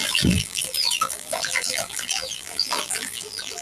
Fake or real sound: fake